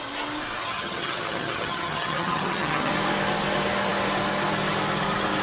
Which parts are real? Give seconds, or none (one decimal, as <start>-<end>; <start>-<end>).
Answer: 0.0-0.6; 2.9-5.4